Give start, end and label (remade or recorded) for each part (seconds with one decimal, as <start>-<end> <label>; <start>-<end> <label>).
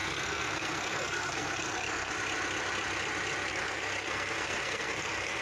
0.0-2.1 remade; 2.1-3.5 recorded; 3.5-5.4 remade